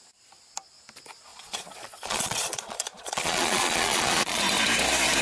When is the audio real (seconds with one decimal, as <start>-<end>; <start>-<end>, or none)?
0.0-1.3; 4.4-5.2